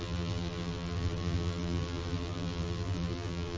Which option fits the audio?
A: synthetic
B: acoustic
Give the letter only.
A